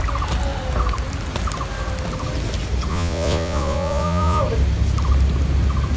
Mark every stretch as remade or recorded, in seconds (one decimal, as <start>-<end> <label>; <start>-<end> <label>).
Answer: 0.0-2.9 recorded; 2.9-4.4 remade; 4.4-6.0 recorded